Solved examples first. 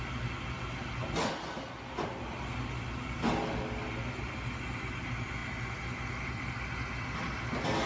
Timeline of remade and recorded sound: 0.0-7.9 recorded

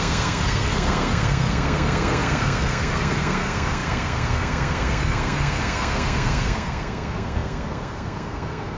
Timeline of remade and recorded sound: 0.0-8.8 remade

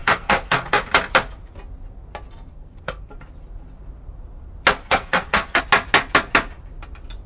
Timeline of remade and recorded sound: 0.0-0.8 remade; 0.8-2.5 recorded; 2.5-3.1 remade; 3.1-4.8 recorded; 4.8-5.6 remade; 5.6-7.3 recorded

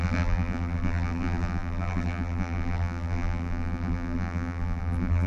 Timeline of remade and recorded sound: 0.0-5.3 remade

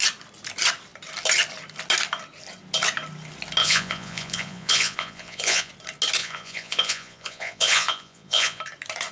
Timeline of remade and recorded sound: 0.0-3.6 recorded; 3.6-5.7 remade; 5.7-6.2 recorded; 6.2-8.6 remade; 8.6-9.1 recorded

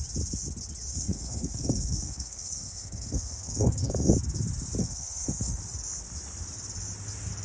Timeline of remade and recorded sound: 0.0-0.9 recorded; 0.9-4.1 remade; 4.1-4.8 recorded; 4.8-5.6 remade; 5.6-7.4 recorded